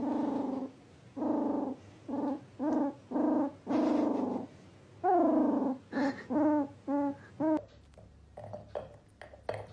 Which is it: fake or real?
real